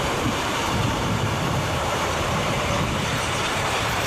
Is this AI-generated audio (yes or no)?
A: yes